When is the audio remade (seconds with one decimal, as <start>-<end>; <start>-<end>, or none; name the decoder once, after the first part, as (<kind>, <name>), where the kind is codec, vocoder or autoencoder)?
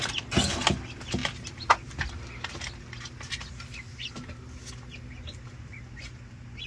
none